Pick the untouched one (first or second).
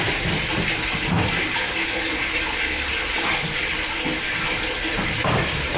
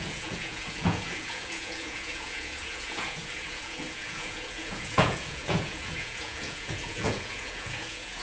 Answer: first